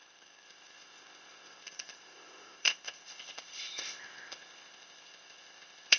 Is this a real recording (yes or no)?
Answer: no